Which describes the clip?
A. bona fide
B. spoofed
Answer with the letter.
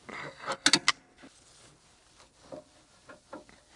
A